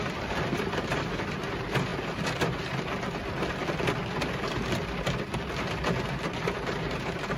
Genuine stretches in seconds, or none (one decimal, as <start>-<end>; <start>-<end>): 1.9-6.3